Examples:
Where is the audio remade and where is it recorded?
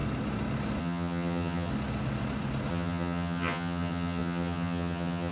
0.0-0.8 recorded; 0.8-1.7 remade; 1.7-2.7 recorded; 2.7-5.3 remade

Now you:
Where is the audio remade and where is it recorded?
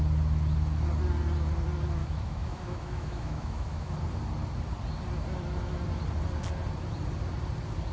0.0-2.0 recorded; 2.0-3.9 remade; 3.9-7.9 recorded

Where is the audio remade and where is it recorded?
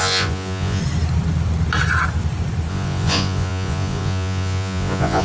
0.0-0.8 remade; 0.8-2.7 recorded; 2.7-5.2 remade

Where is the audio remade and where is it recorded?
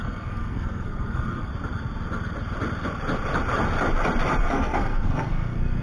0.0-1.5 remade; 1.5-4.4 recorded; 4.4-5.8 remade